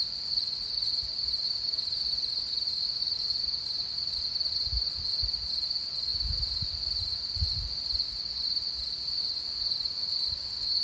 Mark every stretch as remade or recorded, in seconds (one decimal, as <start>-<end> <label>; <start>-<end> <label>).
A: 0.0-3.0 recorded; 3.0-4.2 remade; 4.2-10.8 recorded